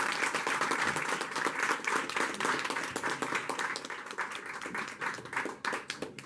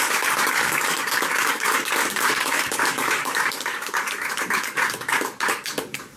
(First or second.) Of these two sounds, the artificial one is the second